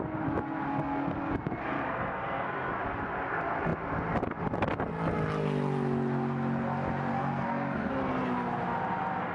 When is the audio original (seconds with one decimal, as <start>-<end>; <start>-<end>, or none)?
0.0-0.7; 2.8-7.1; 7.9-9.3